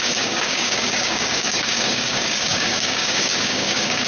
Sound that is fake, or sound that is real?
fake